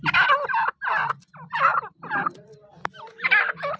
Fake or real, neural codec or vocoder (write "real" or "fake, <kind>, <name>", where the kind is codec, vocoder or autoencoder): real